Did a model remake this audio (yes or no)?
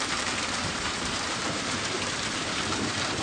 yes